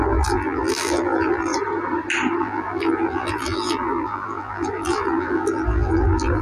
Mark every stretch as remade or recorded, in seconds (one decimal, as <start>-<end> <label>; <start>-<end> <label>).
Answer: 0.0-1.5 remade; 1.5-2.4 recorded; 2.4-6.4 remade